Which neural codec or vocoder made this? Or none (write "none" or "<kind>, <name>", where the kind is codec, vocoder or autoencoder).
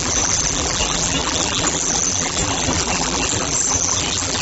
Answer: vocoder, BigVGAN v2